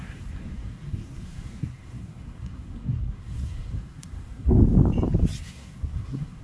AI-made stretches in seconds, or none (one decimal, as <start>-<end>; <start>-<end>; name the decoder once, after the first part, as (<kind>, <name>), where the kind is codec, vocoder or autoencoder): 0.0-4.6 (codec, SNAC); 5.4-6.4